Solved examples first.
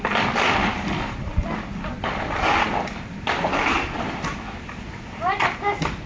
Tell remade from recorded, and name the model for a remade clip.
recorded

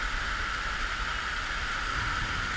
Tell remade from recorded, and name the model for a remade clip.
recorded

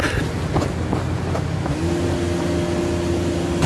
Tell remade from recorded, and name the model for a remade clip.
recorded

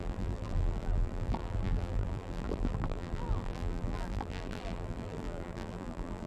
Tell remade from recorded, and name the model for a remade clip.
remade, vocoder, BigVGAN v2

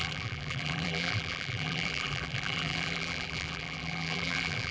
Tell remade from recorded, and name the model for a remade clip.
remade, vocoder, BigVGAN v2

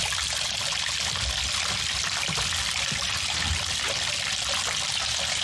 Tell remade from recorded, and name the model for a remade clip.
recorded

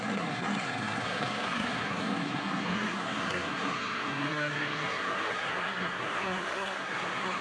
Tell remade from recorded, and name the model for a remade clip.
remade, codec, SNAC